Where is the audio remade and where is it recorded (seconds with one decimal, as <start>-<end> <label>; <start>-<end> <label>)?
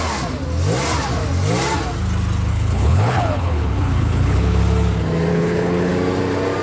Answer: 0.0-2.5 recorded; 2.5-4.6 remade; 4.6-5.3 recorded; 5.3-5.9 remade; 5.9-6.6 recorded